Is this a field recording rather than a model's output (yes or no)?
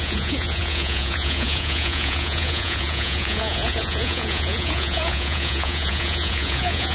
no